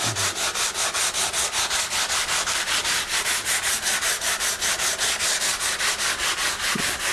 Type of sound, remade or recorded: recorded